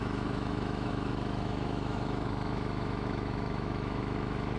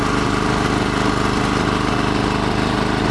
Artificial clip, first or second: first